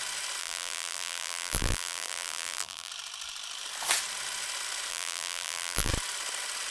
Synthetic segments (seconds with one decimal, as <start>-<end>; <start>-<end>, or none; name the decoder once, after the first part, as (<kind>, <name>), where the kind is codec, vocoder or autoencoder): 0.4-2.9 (vocoder, BigVGAN v2); 4.9-5.9